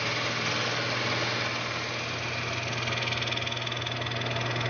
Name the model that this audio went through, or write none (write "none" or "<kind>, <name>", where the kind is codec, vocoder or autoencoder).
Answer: none